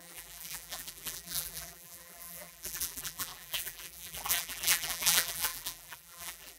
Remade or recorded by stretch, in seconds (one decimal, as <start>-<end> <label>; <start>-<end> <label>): 0.0-6.6 remade